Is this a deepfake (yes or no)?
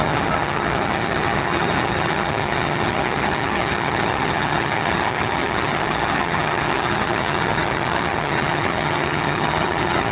yes